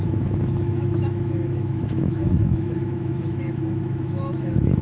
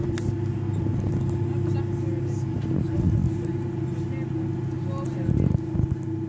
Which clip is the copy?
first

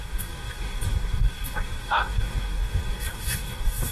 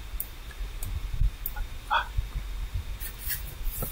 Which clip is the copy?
first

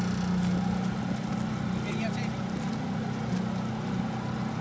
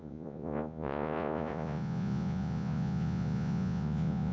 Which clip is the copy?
second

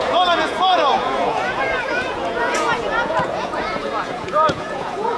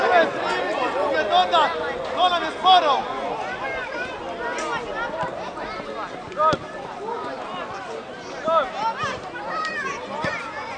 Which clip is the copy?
first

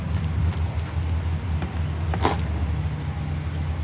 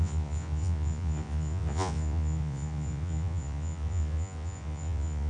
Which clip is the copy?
second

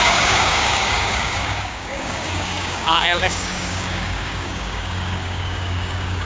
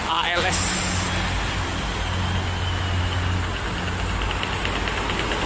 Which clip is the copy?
first